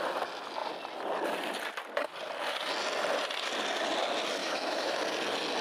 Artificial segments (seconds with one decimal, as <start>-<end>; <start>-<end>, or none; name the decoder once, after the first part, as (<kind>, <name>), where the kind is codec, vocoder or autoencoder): 4.4-5.0 (autoencoder, DAC-VAE)